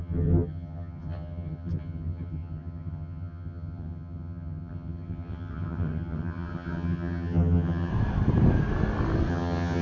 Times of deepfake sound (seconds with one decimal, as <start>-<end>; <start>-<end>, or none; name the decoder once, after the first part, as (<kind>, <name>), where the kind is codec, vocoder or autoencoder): 0.0-7.9 (vocoder, HiFi-GAN); 9.3-9.8